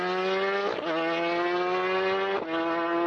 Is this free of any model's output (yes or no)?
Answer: yes